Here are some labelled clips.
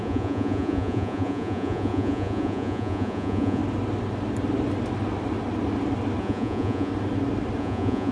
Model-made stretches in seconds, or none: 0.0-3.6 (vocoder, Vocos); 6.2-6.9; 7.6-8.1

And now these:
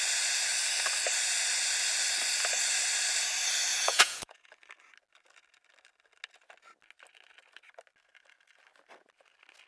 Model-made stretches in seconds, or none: 3.7-4.5 (vocoder, Vocos)

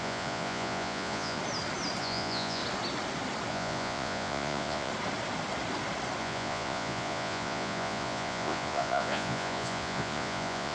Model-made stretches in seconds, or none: 0.0-1.4 (vocoder, Vocos); 2.0-2.6; 3.5-4.9; 6.2-10.7

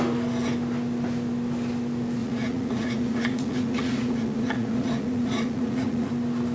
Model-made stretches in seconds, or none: 2.2-6.1 (vocoder, Vocos)

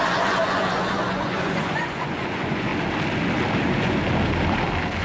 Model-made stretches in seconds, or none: 0.0-2.7 (vocoder, Vocos); 3.6-4.0

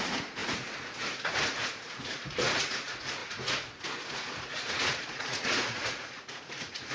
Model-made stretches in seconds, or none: 0.0-6.9 (vocoder, Vocos)